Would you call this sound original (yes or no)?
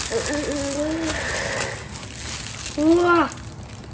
yes